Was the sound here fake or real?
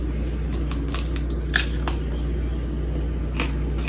real